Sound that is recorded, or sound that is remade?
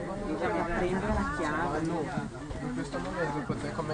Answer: recorded